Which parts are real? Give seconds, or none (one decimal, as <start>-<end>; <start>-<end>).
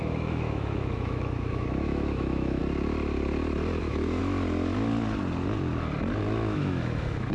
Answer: 2.6-3.8; 4.2-6.2